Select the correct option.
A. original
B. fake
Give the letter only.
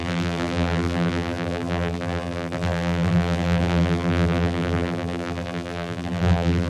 B